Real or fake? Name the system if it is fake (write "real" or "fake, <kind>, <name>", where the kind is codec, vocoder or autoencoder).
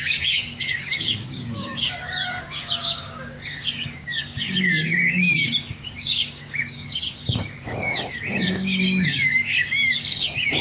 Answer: fake, codec, DAC